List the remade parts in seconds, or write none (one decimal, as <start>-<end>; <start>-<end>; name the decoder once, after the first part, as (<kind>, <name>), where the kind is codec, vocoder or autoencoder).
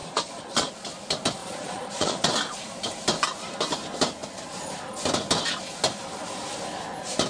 0.0-0.7 (vocoder, Vocos); 1.4-2.3